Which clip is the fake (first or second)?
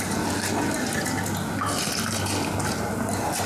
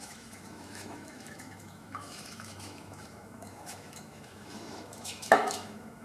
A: second